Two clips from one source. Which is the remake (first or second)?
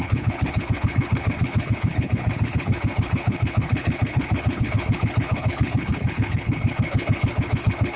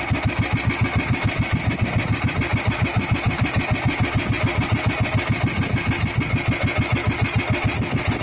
first